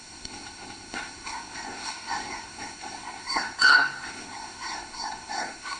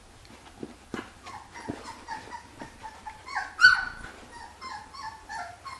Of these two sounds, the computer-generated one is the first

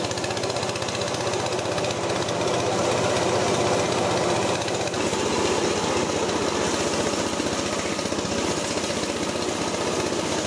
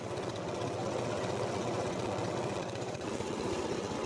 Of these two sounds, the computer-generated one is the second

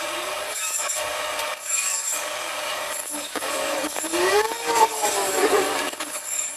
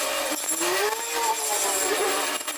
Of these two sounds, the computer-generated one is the first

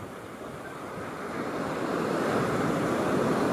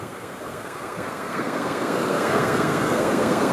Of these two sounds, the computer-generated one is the second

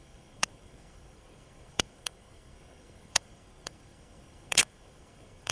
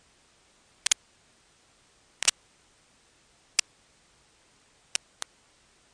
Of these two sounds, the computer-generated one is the first